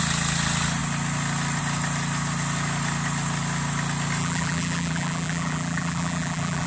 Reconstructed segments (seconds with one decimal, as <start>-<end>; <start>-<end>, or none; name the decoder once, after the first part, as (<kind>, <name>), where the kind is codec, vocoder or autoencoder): 4.2-6.7 (vocoder, BigVGAN v2)